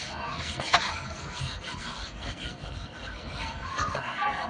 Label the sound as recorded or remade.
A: remade